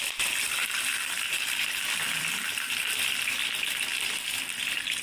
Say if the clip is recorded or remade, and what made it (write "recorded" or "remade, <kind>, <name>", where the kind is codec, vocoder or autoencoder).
remade, vocoder, BigVGAN v2